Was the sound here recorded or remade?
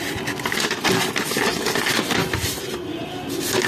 recorded